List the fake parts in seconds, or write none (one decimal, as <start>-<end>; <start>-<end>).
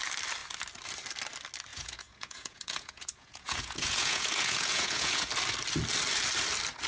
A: 1.7-5.3